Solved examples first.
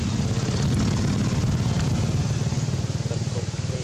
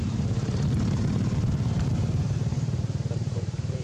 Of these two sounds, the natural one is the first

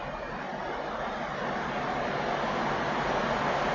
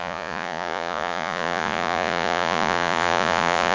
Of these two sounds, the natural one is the first